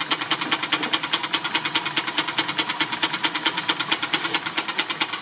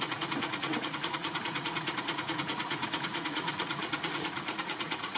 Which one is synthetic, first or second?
second